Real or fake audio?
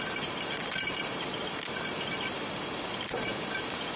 real